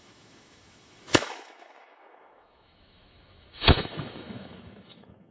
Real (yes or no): no